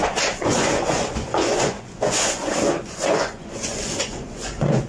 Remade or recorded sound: remade